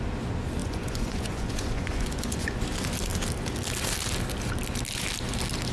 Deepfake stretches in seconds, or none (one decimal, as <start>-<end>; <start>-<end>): 0.6-2.6